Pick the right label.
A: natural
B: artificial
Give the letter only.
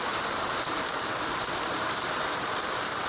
B